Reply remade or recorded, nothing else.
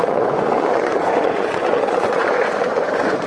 remade